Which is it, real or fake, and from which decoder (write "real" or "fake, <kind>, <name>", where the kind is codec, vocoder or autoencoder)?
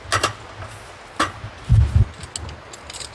real